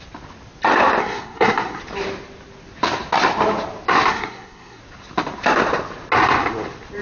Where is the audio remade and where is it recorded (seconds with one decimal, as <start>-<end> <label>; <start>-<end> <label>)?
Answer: 0.0-1.0 recorded; 1.0-1.8 remade; 1.8-4.1 recorded; 4.1-4.8 remade; 4.8-7.0 recorded